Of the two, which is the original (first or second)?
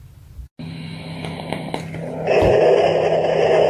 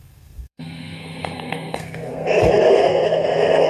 first